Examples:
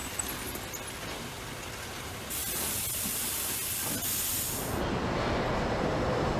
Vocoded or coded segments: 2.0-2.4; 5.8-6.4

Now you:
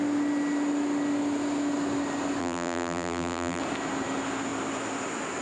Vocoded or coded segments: 2.4-3.6

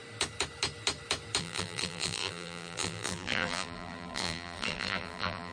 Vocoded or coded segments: 1.4-5.5

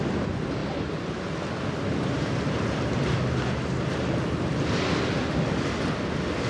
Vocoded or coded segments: 0.6-3.2

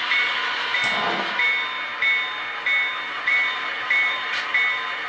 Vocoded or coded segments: 0.0-0.8; 3.1-4.5

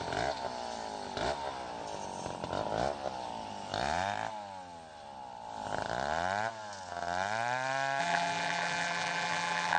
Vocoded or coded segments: 8.0-9.8